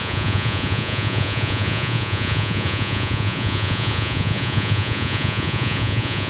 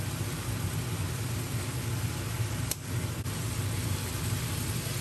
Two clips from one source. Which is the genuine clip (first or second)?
second